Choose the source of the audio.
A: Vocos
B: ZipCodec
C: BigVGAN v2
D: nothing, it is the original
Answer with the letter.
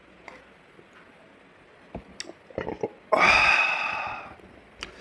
D